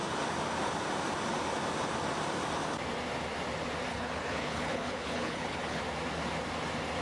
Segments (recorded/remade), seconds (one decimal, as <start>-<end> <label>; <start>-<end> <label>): 0.0-3.9 recorded; 3.9-5.8 remade; 5.8-7.0 recorded